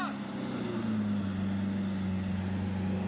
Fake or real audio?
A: real